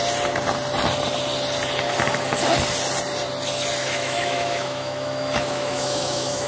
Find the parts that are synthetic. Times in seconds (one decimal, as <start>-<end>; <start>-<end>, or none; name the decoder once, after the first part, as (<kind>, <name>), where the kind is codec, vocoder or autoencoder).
3.8-6.5 (autoencoder, DAC-VAE)